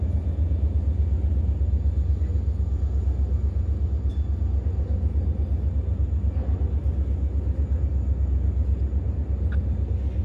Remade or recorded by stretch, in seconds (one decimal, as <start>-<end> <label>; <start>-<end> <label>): 0.0-10.2 recorded